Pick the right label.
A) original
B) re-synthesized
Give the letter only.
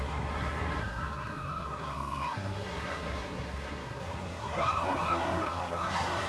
B